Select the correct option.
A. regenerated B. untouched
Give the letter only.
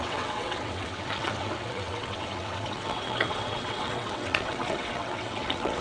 A